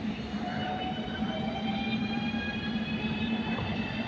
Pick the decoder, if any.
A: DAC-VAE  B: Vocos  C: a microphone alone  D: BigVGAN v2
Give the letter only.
D